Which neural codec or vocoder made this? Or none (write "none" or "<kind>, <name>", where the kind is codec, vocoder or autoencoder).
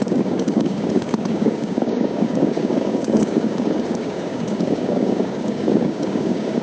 codec, DAC